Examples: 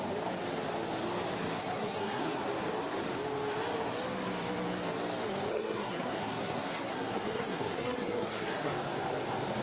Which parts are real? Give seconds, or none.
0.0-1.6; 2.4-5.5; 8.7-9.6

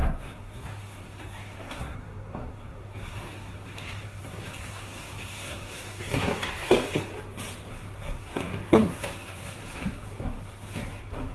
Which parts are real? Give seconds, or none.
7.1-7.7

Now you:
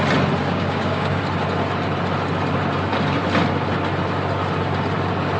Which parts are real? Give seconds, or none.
0.0-0.4; 1.2-5.4

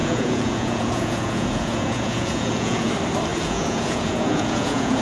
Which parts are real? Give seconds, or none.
2.9-3.3

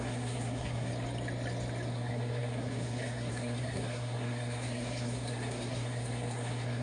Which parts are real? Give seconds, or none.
0.9-1.9

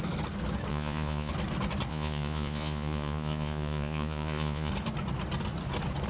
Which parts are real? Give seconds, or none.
0.0-0.7; 1.3-1.9; 4.7-6.1